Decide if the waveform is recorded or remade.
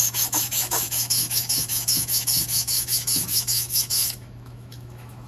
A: remade